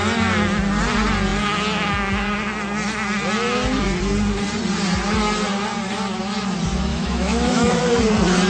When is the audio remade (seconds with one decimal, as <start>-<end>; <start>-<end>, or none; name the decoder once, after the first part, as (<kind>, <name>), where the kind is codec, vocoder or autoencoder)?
6.9-7.8 (autoencoder, DAC-VAE)